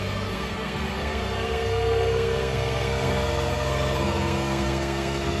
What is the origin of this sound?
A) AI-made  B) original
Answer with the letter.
A